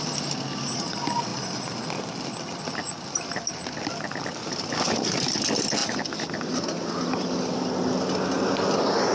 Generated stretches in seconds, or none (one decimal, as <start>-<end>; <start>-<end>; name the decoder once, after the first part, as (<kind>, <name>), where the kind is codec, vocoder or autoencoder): none